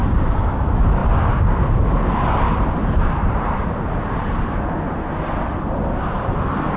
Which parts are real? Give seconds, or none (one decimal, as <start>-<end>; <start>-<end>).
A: 0.5-2.8; 4.5-6.8